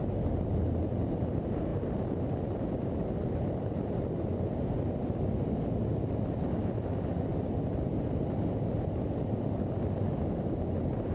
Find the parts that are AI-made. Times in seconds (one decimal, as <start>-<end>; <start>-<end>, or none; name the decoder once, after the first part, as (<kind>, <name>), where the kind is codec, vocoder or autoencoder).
none